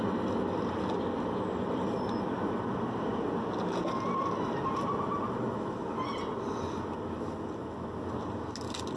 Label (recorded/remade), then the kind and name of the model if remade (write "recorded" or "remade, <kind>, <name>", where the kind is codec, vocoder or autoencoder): recorded